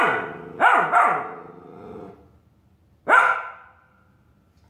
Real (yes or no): yes